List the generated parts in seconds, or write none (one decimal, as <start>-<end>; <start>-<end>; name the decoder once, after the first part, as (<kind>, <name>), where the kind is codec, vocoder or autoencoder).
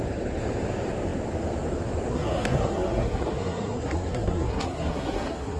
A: 2.1-5.6 (codec, SNAC)